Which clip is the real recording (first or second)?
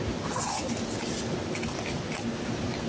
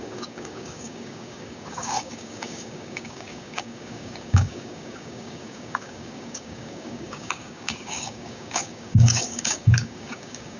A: first